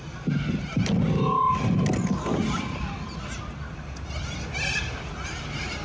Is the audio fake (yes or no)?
no